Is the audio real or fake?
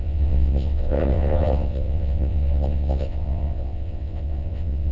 fake